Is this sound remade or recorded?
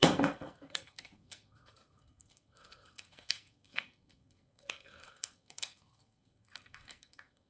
remade